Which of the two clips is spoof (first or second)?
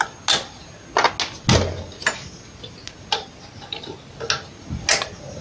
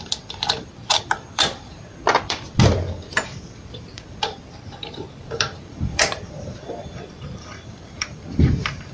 second